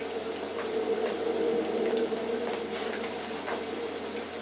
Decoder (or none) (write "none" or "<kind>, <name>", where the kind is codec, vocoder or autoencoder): none